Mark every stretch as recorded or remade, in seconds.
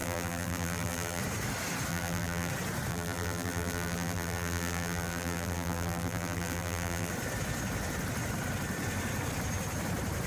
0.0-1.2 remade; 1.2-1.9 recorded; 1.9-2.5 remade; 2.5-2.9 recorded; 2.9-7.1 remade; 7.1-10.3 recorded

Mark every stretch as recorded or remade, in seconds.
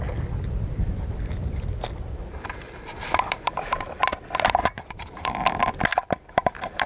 0.0-2.3 recorded; 2.3-4.0 remade; 4.0-4.6 recorded; 4.6-5.5 remade; 5.5-5.9 recorded; 5.9-6.9 remade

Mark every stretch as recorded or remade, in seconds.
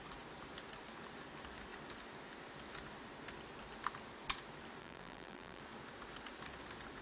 0.0-4.8 recorded; 4.8-5.6 remade; 5.6-7.0 recorded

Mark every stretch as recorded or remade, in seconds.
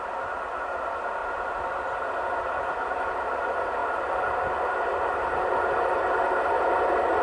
0.0-3.8 recorded; 3.8-4.3 remade; 4.3-7.2 recorded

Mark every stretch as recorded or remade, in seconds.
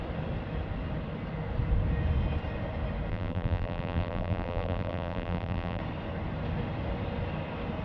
0.0-3.1 recorded; 3.1-5.8 remade; 5.8-7.8 recorded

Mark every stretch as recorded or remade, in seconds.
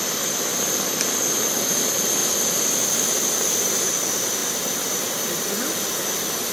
0.0-2.2 recorded; 2.2-3.9 remade; 3.9-4.4 recorded; 4.4-5.4 remade; 5.4-6.5 recorded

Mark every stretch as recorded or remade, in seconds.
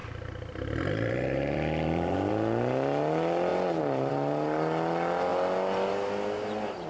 0.0-2.3 remade; 2.3-3.5 recorded; 3.5-4.1 remade; 4.1-5.3 recorded; 5.3-5.9 remade; 5.9-6.9 recorded